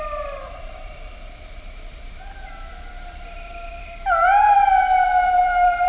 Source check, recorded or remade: remade